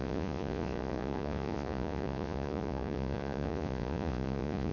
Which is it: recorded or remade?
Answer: remade